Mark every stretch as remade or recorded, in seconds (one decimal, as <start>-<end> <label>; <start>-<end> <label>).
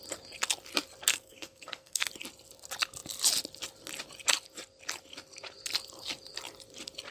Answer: 0.0-1.1 recorded; 1.1-2.1 remade; 2.1-7.1 recorded